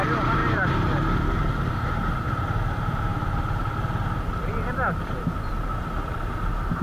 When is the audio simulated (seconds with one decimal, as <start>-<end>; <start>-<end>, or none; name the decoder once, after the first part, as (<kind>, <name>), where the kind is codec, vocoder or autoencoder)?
none